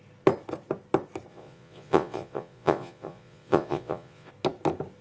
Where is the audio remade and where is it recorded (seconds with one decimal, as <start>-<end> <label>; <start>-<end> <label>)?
0.0-1.3 recorded; 1.3-4.3 remade; 4.3-5.0 recorded

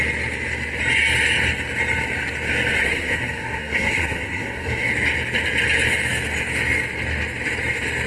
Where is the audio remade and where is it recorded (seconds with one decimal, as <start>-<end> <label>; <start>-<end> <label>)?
0.0-2.8 recorded; 2.8-4.9 remade; 4.9-8.1 recorded